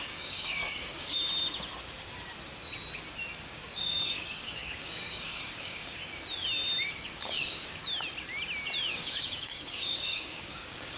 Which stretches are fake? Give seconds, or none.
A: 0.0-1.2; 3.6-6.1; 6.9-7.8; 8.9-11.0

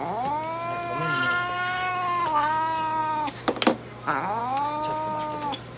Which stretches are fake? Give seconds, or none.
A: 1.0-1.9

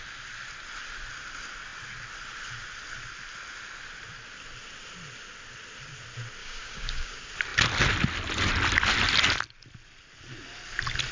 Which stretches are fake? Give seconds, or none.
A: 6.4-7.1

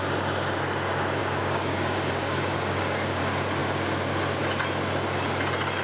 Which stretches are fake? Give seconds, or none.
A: 1.2-3.2